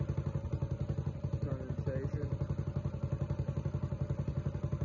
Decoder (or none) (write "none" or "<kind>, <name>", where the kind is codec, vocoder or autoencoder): none